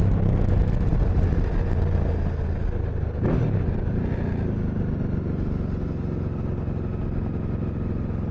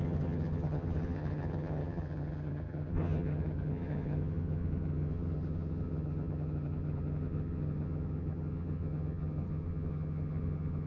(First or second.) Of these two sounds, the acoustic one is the first